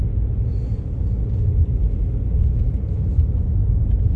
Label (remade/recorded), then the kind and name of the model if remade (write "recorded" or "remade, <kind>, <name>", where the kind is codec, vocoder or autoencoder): recorded